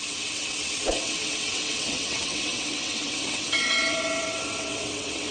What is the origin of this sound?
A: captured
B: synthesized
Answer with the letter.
B